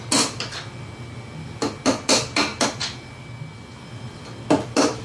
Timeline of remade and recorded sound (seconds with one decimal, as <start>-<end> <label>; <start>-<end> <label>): 0.0-5.0 recorded